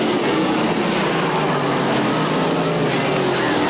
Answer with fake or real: real